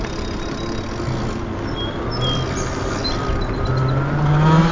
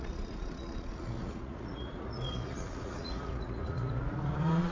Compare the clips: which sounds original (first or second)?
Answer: first